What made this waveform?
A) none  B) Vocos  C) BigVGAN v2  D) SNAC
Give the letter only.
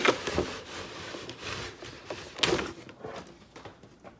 A